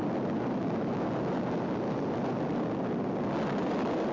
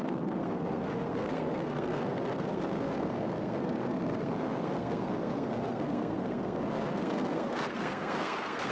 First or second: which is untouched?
first